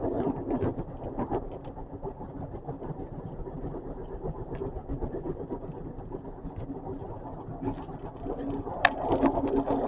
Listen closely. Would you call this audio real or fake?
real